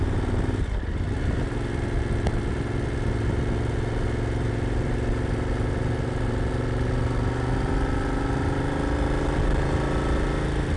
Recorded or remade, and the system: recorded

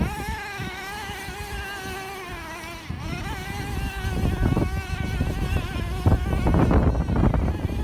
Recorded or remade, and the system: recorded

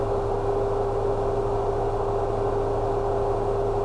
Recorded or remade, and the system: recorded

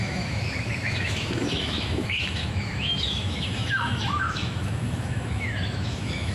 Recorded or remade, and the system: remade, autoencoder, DAC-VAE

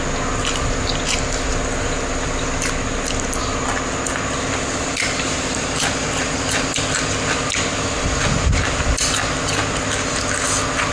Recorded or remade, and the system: recorded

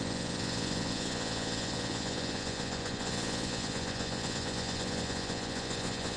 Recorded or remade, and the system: remade, vocoder, Vocos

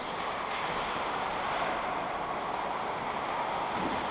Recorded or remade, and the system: recorded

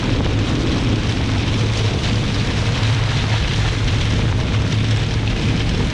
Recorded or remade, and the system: recorded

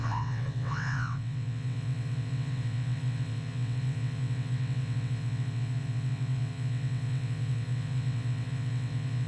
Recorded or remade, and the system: remade, vocoder, WaveNeXt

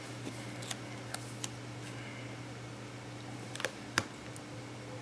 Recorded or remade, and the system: recorded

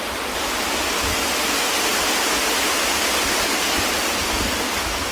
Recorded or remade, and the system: recorded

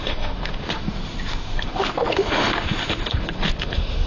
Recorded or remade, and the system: remade, autoencoder, DAC-VAE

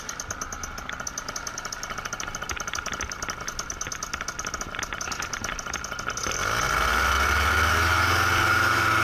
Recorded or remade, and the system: recorded